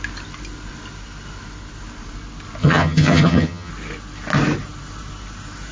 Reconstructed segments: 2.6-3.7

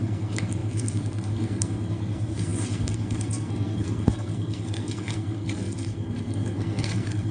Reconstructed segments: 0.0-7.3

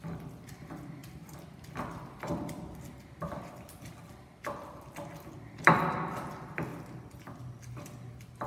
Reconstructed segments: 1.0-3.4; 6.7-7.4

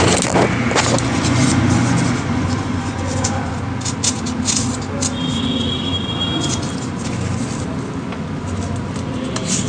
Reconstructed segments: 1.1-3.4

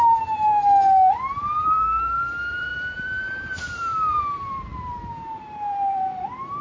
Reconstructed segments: 0.0-0.5; 1.6-6.6

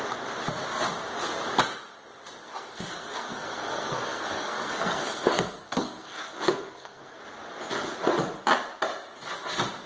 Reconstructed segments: 2.4-7.2

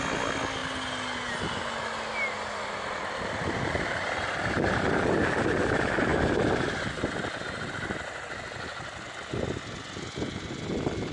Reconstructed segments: none